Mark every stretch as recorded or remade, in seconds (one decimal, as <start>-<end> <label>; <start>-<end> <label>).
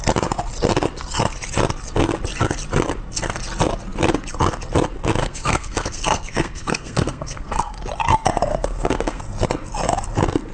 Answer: 0.0-5.2 recorded; 5.2-7.7 remade; 7.7-8.5 recorded; 8.5-9.2 remade; 9.2-10.5 recorded